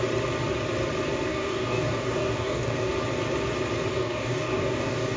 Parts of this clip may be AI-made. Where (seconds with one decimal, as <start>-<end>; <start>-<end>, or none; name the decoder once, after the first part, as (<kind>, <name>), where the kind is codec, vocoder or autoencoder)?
1.3-2.9 (codec, DAC); 3.9-5.2